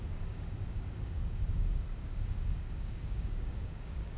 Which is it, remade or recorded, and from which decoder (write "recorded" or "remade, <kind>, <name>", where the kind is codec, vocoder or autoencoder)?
remade, codec, DAC